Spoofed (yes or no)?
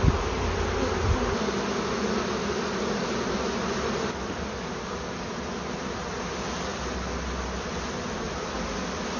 no